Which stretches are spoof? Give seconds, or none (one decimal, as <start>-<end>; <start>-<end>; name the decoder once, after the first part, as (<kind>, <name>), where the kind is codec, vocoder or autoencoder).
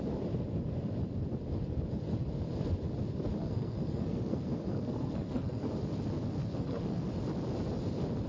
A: 3.4-5.7 (codec, SNAC); 6.4-7.0